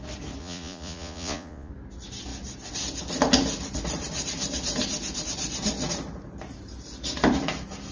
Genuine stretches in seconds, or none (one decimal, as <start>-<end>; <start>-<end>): 0.0-0.4; 1.7-7.9

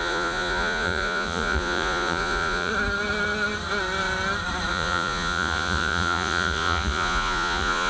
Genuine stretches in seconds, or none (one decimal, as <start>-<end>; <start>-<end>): 2.7-4.7

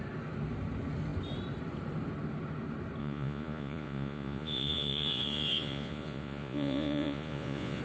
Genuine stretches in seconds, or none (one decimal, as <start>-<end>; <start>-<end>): 0.0-3.0

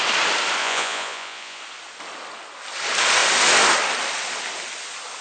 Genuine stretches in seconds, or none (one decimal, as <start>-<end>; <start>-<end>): 0.0-0.6; 1.6-5.2

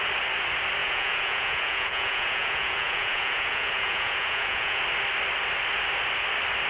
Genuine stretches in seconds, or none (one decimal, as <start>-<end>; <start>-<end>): 0.0-0.8; 4.8-6.7

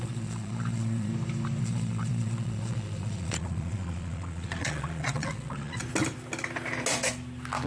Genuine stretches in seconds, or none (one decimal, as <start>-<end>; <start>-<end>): 1.1-1.6; 5.8-7.7

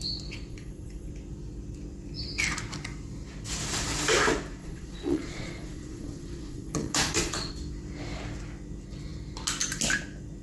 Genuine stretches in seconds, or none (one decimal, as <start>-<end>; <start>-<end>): 0.0-0.5; 1.1-4.6; 7.5-10.4